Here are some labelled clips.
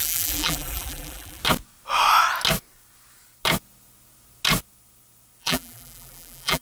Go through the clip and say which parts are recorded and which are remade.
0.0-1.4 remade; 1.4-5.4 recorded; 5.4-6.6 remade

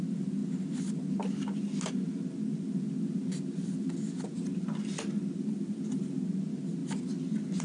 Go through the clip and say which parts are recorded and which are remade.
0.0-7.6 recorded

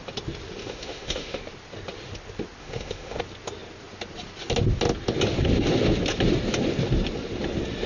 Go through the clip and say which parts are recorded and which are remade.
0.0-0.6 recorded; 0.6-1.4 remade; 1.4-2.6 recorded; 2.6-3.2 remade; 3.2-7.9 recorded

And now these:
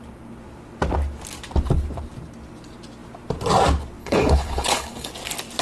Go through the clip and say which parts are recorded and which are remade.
0.0-4.0 recorded; 4.0-5.1 remade; 5.1-5.6 recorded

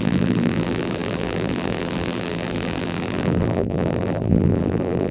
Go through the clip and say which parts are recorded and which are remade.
0.0-5.1 remade